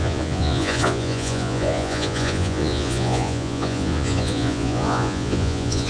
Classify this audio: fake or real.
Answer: fake